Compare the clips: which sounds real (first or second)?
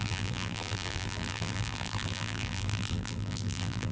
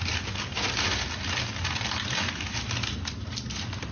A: second